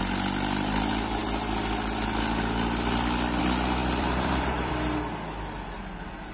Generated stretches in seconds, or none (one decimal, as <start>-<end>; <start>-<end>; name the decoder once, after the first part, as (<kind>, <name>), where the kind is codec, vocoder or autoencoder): 3.8-4.7 (vocoder, BigVGAN v2)